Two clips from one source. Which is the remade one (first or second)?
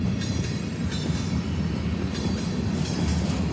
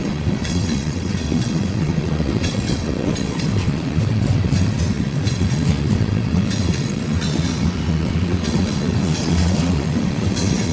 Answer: second